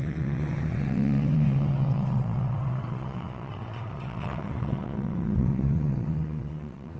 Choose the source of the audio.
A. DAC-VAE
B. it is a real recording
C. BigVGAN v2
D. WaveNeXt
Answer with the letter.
D